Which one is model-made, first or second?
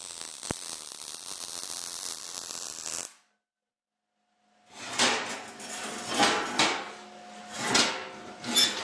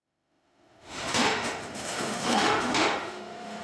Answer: second